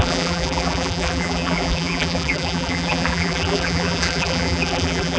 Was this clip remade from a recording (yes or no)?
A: yes